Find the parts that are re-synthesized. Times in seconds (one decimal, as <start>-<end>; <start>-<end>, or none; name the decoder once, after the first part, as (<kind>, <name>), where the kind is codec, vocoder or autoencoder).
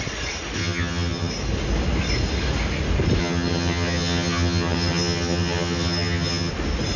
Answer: 0.6-1.3 (vocoder, HiFi-GAN); 3.2-6.5